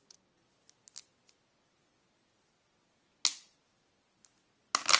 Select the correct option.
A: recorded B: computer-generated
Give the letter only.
A